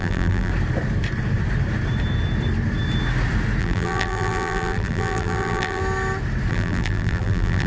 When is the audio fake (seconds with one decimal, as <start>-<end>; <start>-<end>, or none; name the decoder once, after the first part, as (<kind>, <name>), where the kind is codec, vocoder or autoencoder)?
0.0-0.5 (vocoder, BigVGAN v2); 3.6-5.8; 6.5-7.7